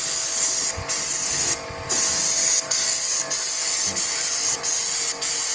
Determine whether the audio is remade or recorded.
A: recorded